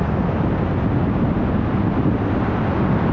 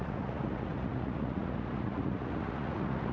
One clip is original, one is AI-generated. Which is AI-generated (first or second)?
second